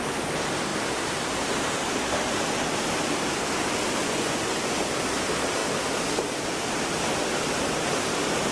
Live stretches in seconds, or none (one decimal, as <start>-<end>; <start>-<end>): 0.0-4.0; 4.8-8.5